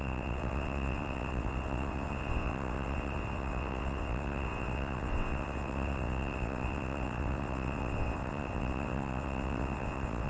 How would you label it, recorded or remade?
remade